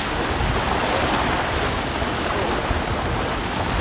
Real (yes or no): yes